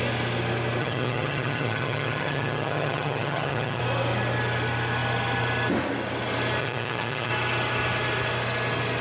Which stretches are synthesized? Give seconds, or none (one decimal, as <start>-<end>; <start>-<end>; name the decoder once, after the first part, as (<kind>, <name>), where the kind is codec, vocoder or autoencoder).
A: 0.8-3.8 (vocoder, HiFi-GAN); 6.6-7.3